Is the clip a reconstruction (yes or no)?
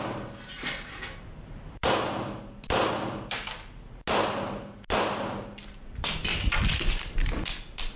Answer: no